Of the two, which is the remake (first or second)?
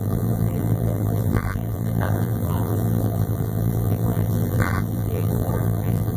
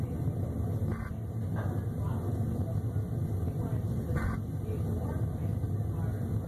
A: first